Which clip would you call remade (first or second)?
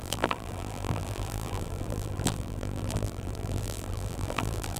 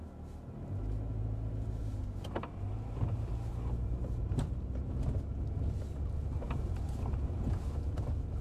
first